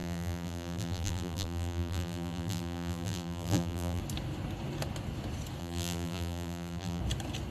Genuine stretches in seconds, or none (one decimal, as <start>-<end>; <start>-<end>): 4.0-5.6; 7.0-7.5